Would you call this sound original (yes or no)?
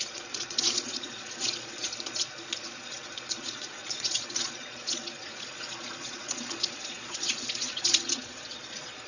no